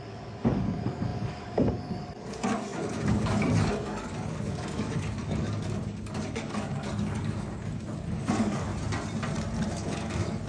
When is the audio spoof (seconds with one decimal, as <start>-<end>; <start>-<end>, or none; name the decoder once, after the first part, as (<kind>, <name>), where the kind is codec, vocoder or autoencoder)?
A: 0.0-8.7 (codec, DAC); 9.7-10.5